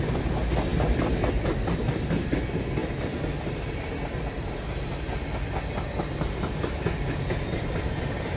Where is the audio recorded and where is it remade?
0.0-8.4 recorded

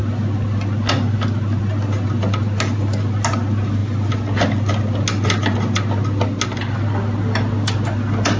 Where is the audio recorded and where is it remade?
0.0-8.4 recorded

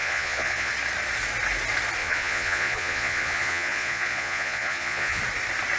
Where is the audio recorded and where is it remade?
0.0-0.7 remade; 0.7-2.0 recorded; 2.0-5.2 remade; 5.2-5.8 recorded

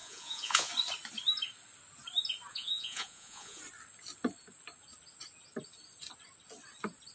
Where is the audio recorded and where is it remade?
0.0-0.7 remade; 0.7-2.5 recorded; 2.5-3.6 remade; 3.6-7.1 recorded

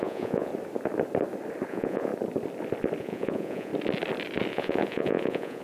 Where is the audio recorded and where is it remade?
0.0-0.5 remade; 0.5-1.7 recorded; 1.7-2.1 remade; 2.1-3.0 recorded; 3.0-3.7 remade; 3.7-4.5 recorded; 4.5-5.6 remade